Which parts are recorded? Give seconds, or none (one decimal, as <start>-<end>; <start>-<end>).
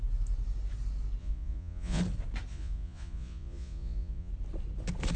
0.0-1.2; 2.0-2.5; 4.3-5.2